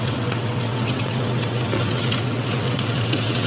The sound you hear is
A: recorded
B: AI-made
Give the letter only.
B